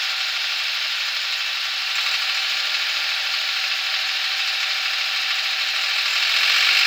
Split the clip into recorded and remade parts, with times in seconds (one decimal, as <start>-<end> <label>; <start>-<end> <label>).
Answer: 0.0-6.9 recorded